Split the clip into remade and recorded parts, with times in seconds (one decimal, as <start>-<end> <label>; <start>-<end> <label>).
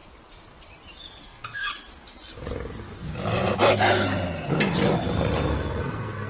0.0-1.2 recorded; 1.2-1.7 remade; 1.7-5.5 recorded; 5.5-6.3 remade